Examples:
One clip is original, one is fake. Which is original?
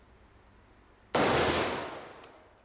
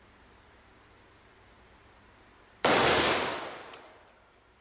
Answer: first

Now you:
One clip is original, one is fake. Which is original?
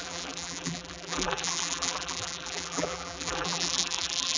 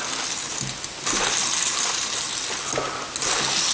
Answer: second